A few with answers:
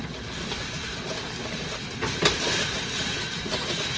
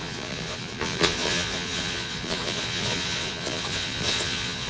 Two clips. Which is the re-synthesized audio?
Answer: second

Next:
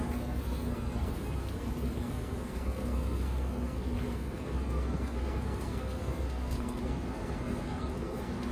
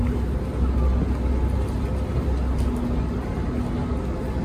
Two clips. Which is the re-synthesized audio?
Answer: first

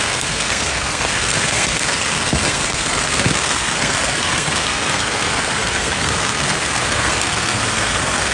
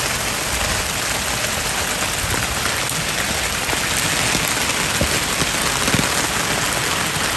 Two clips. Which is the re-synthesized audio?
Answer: first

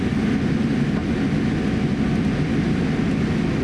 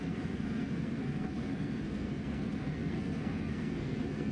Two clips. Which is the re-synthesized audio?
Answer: second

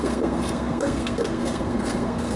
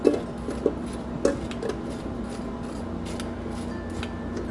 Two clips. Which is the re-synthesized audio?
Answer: first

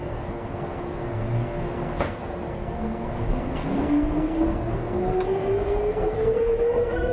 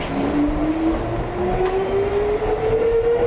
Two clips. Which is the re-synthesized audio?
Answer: first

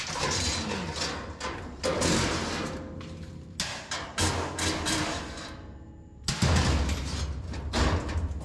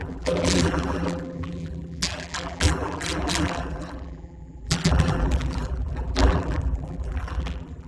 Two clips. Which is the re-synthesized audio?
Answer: second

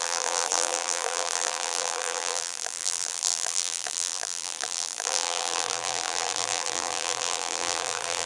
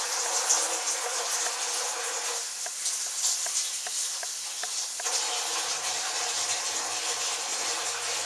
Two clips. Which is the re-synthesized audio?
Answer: first